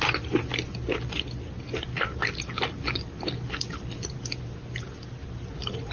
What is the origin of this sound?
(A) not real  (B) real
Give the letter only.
B